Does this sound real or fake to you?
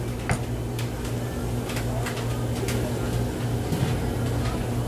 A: real